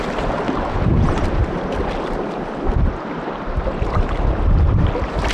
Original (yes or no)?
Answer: yes